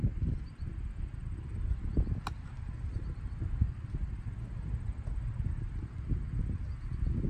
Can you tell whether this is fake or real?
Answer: real